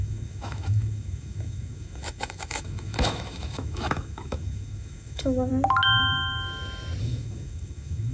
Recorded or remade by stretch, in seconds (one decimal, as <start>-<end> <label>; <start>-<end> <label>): 0.0-5.5 remade; 5.5-7.0 recorded; 7.0-8.1 remade